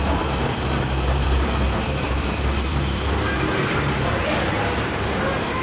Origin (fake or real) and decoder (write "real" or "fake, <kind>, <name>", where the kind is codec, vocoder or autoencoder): fake, vocoder, BigVGAN v2